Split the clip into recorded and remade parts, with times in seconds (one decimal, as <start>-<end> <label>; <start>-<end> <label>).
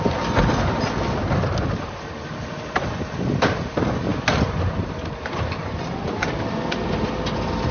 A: 0.0-4.1 recorded; 4.1-5.8 remade; 5.8-7.7 recorded